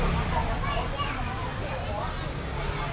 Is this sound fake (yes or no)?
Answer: no